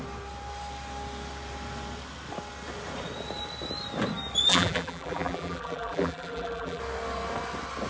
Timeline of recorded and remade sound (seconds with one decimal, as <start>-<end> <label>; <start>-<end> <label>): 0.0-4.5 recorded; 4.5-6.8 remade; 6.8-7.9 recorded